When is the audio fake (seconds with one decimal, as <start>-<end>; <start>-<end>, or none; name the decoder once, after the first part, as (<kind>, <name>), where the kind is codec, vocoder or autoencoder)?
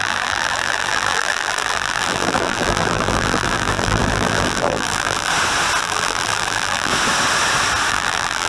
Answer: 0.0-5.3 (vocoder, BigVGAN v2); 5.8-6.9; 7.9-8.5